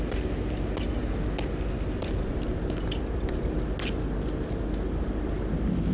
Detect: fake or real real